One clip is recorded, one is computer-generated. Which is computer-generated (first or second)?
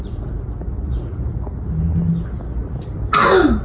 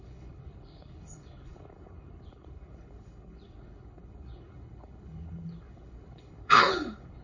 second